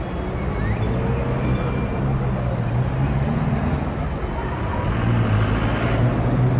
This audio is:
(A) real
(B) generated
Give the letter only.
A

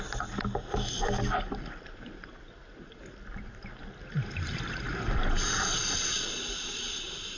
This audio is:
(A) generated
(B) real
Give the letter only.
B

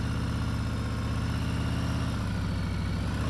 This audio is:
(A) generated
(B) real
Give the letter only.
B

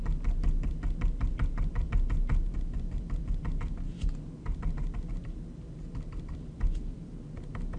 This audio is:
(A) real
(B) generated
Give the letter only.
A